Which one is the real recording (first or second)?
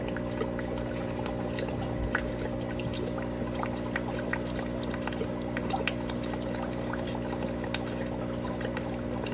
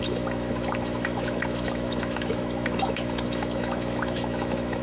first